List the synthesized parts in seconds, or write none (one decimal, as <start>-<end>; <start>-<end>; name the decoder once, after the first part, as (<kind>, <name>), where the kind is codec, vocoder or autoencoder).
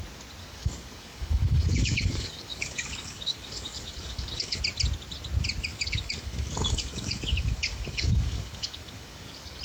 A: 0.4-4.6 (codec, DAC); 5.7-9.6